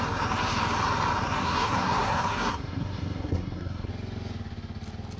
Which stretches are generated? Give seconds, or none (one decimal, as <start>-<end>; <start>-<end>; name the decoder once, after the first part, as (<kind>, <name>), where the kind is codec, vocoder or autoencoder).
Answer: 1.4-3.9 (codec, SNAC)